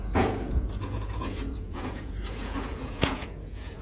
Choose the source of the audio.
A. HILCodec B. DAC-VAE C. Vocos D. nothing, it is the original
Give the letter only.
C